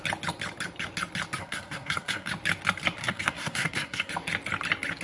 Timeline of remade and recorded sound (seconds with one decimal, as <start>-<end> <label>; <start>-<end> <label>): 0.0-1.4 recorded; 1.4-2.3 remade; 2.3-3.0 recorded; 3.0-4.1 remade; 4.1-5.0 recorded

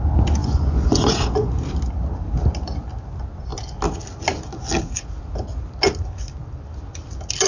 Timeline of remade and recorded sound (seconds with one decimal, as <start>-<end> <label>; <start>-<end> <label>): 0.0-0.4 recorded; 0.4-1.5 remade; 1.5-7.5 recorded

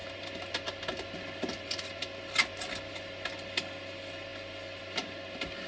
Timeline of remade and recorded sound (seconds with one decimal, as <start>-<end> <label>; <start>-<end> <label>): 0.0-5.7 recorded

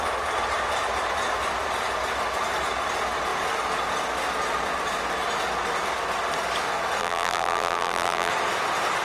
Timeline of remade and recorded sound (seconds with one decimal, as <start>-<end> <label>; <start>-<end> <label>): 0.0-7.0 recorded; 7.0-8.3 remade; 8.3-9.0 recorded

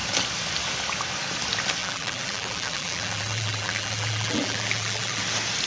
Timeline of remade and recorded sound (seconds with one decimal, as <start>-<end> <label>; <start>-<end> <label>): 0.0-1.8 recorded; 1.8-5.2 remade; 5.2-5.7 recorded